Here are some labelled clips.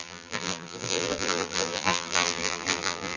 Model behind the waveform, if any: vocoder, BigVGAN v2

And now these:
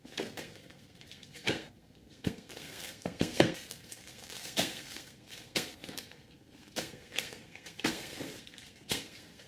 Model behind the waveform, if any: codec, SNAC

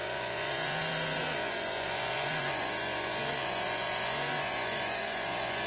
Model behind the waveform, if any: vocoder, Vocos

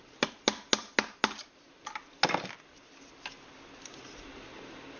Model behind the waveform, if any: none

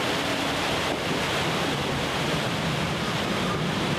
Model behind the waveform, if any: none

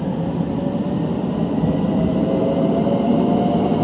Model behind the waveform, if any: none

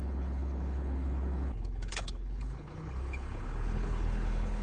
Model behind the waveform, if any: codec, HILCodec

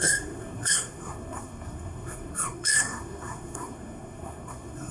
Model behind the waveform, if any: codec, SNAC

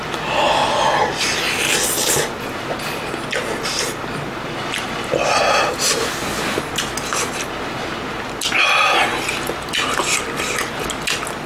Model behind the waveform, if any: none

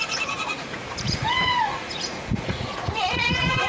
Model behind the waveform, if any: vocoder, Vocos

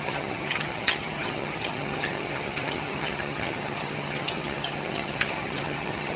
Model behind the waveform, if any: vocoder, HiFi-GAN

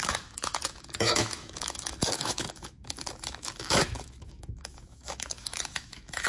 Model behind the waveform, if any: autoencoder, DAC-VAE